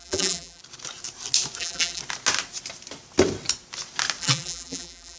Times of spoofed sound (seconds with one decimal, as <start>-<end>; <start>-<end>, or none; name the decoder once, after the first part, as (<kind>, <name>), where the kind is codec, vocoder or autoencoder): 0.0-0.6 (vocoder, BigVGAN v2); 1.6-2.0; 4.2-5.2